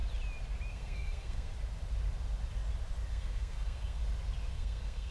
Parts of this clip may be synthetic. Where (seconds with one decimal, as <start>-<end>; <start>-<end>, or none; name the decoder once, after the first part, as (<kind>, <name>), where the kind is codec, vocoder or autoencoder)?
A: 0.7-1.5 (codec, SNAC); 3.1-4.0; 4.5-5.1